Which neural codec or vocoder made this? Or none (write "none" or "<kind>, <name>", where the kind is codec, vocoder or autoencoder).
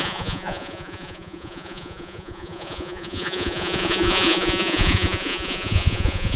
vocoder, Vocos